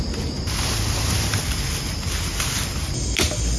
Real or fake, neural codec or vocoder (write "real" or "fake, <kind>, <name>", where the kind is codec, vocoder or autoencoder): real